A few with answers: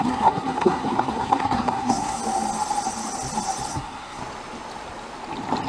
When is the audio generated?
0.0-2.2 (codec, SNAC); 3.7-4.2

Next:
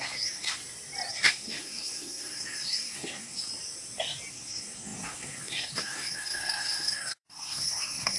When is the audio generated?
0.0-0.6 (codec, SNAC); 1.1-3.5; 4.3-8.2

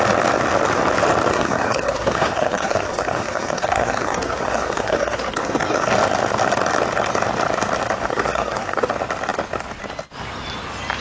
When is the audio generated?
1.3-5.9 (codec, SNAC); 8.1-8.9

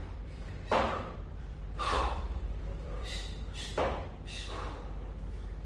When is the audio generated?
0.0-3.4 (vocoder, BigVGAN v2)

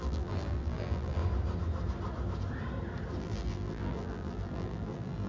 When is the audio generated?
0.0-1.2 (vocoder, BigVGAN v2); 3.2-5.3

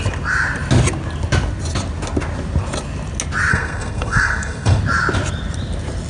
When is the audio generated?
3.5-4.8 (codec, SNAC)

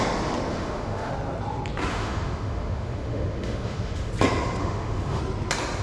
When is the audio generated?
0.5-1.1 (autoencoder, DAC-VAE); 1.9-4.1; 4.6-5.2

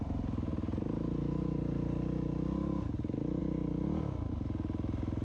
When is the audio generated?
none